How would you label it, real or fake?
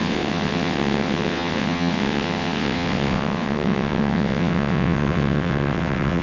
fake